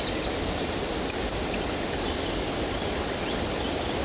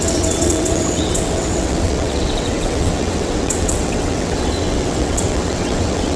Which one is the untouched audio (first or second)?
first